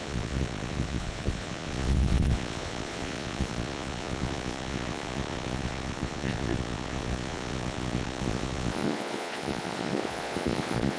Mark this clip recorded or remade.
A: remade